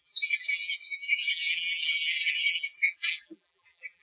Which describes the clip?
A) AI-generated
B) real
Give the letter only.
A